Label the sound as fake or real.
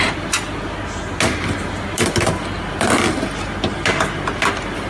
real